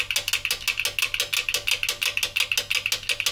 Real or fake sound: real